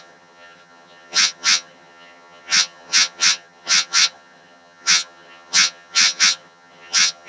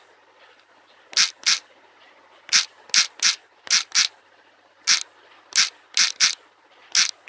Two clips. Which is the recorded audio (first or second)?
second